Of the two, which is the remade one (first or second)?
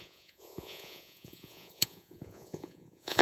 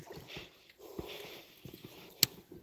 first